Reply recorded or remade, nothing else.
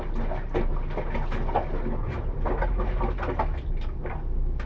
recorded